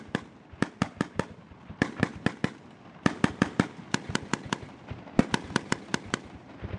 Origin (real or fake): real